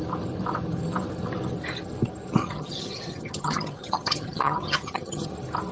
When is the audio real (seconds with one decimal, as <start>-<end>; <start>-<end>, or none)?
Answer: 0.0-2.4; 5.3-5.7